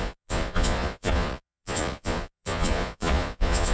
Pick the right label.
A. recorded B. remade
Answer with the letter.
B